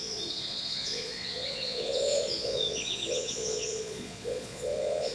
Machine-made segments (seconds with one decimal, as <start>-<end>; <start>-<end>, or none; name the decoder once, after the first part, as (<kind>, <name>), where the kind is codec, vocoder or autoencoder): 0.0-5.1 (vocoder, Vocos)